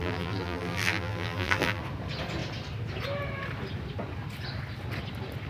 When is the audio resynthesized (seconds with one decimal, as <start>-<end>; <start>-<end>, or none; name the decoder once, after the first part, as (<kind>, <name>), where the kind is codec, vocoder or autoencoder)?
0.0-1.8 (vocoder, BigVGAN v2)